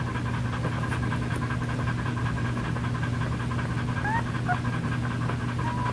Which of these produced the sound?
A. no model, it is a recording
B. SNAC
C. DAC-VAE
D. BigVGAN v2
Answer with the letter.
A